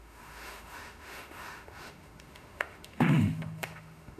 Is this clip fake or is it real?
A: fake